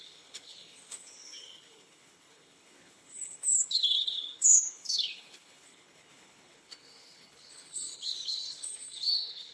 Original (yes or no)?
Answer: no